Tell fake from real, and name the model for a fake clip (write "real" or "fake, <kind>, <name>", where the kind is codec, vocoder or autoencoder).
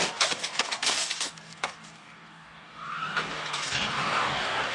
fake, codec, DAC